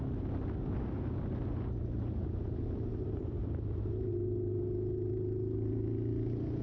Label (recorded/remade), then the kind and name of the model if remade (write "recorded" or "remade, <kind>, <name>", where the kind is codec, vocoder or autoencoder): recorded